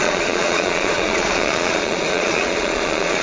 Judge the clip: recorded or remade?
remade